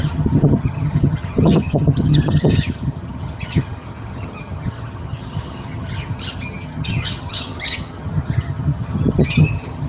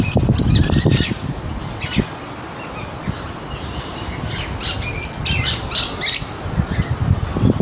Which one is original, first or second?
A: second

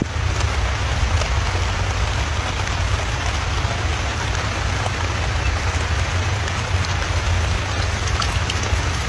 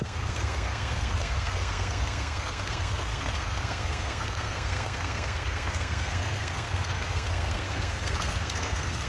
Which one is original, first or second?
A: first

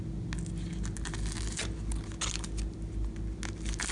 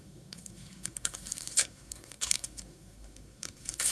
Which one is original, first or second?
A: first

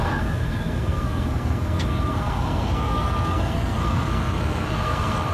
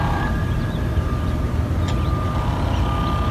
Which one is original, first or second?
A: second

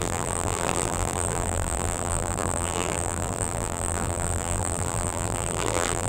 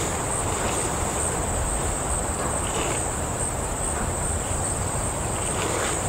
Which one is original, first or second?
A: second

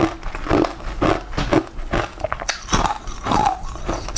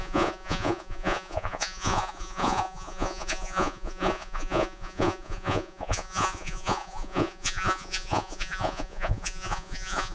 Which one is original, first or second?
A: first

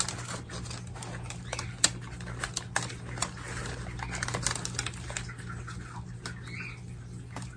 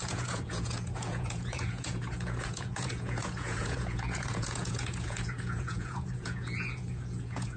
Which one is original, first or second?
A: first